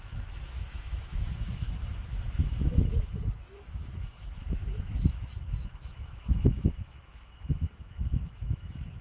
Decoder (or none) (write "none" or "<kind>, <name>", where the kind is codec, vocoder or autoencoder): autoencoder, DAC-VAE